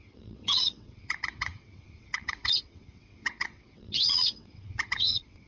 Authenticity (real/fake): fake